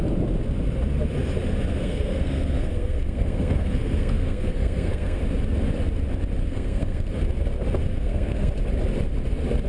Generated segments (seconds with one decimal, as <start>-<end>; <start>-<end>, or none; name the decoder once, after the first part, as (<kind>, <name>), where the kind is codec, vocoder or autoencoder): 1.7-5.2 (codec, SNAC); 6.4-7.1; 7.8-8.5